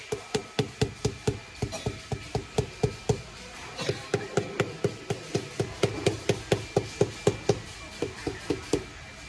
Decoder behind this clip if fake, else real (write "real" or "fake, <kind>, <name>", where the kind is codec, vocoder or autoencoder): real